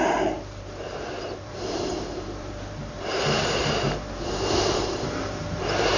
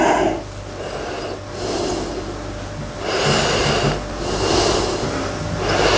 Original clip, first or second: second